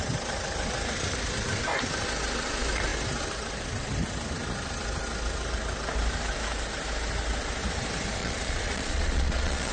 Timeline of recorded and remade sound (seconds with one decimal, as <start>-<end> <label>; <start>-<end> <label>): 0.0-8.2 recorded; 8.2-9.7 remade